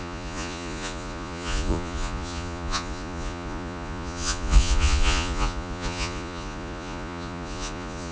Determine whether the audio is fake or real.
fake